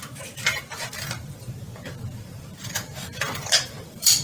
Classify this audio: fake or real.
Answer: fake